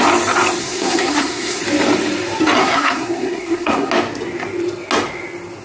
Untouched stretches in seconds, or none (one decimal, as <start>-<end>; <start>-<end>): 0.0-0.6; 1.6-2.6; 3.9-5.6